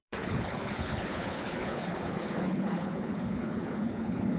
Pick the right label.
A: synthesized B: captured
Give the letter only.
A